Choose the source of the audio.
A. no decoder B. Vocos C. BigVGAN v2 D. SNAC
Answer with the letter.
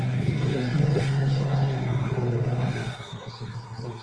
D